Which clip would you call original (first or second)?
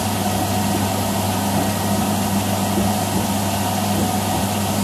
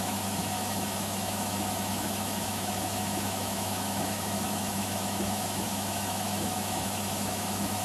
first